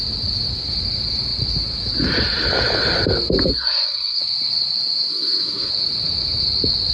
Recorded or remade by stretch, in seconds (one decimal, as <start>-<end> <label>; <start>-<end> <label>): 0.0-3.5 recorded; 3.5-4.2 remade; 4.2-5.1 recorded; 5.1-5.7 remade; 5.7-6.9 recorded